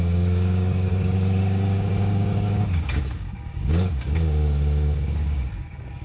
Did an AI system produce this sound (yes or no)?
yes